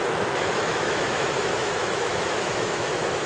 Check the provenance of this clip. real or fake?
fake